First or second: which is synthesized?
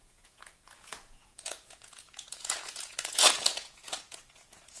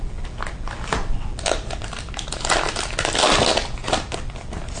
first